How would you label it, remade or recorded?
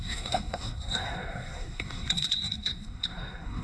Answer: remade